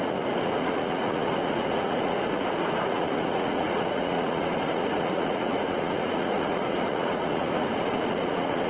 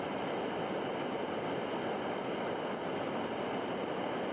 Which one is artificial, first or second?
first